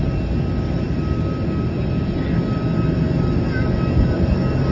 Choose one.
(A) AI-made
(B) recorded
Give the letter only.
B